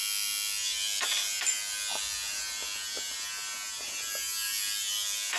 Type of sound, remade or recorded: recorded